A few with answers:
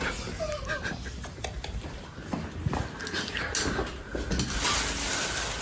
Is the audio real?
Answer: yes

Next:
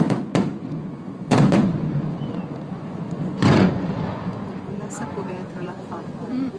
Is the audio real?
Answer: no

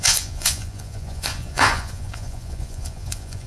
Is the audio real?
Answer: no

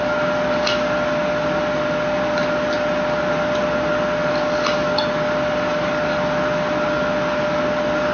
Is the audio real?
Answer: yes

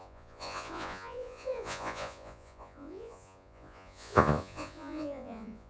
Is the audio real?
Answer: no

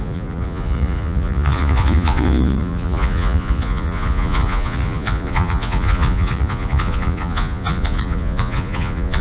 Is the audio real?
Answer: no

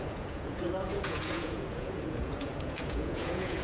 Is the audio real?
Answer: no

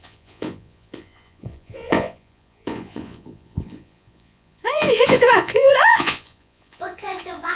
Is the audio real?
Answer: no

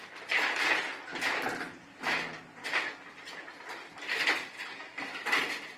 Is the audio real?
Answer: yes